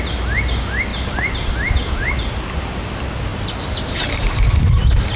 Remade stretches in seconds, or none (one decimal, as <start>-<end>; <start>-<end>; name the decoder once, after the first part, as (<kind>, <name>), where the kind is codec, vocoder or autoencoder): 0.9-2.4 (vocoder, BigVGAN v2); 3.3-4.5

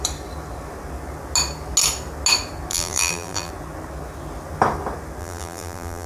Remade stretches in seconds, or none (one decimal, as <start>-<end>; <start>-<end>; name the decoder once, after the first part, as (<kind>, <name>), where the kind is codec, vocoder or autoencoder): 2.7-3.5 (vocoder, BigVGAN v2); 5.2-6.1

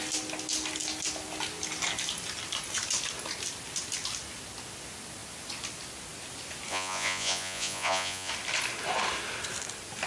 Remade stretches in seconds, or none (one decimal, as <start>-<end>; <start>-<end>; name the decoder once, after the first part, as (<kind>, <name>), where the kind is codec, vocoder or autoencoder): 6.7-8.3 (vocoder, Vocos)

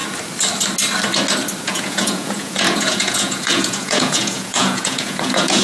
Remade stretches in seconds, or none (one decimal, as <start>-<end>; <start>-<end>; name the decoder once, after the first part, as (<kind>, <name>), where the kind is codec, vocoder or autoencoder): 1.6-5.6 (vocoder, Vocos)

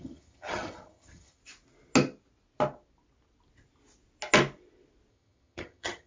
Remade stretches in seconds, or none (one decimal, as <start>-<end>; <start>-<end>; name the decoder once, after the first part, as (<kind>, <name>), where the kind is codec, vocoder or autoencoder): 0.0-1.4 (vocoder, HiFi-GAN); 5.1-6.1

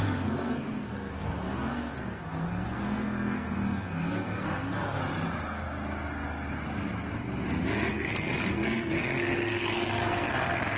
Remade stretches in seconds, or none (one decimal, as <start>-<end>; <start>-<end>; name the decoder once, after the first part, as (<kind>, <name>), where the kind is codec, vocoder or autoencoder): 0.0-5.0 (codec, SNAC); 7.9-10.8